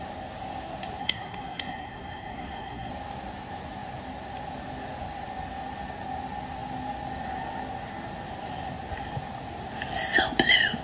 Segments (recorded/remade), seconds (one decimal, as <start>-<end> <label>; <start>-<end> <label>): 0.0-1.0 recorded; 1.0-2.9 remade; 2.9-10.8 recorded